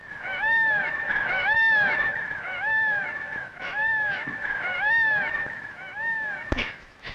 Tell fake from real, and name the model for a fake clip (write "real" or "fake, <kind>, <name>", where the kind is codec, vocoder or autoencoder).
fake, autoencoder, DAC-VAE